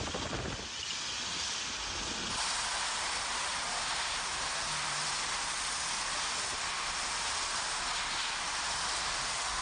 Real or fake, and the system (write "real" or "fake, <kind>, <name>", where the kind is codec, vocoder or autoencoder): real